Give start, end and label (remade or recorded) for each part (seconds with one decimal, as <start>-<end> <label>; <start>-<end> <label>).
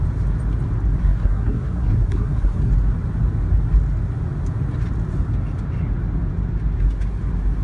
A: 0.0-1.0 recorded; 1.0-2.7 remade; 2.7-7.6 recorded